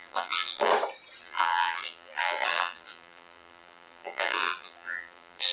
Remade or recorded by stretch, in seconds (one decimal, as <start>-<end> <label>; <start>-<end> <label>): 0.0-0.7 remade; 0.7-1.2 recorded; 1.2-5.5 remade